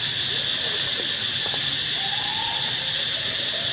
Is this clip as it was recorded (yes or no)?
yes